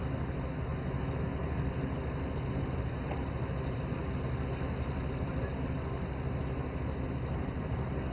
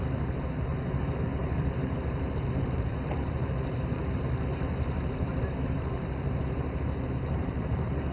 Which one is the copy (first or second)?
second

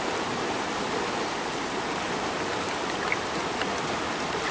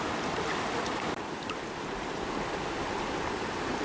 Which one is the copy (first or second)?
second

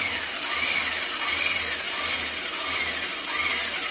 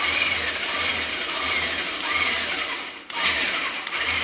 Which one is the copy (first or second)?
second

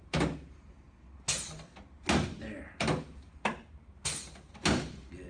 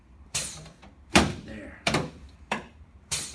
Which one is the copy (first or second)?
second